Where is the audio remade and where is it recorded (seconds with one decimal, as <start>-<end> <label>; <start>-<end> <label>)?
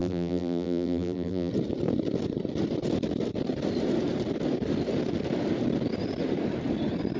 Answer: 0.0-1.5 remade; 1.5-7.2 recorded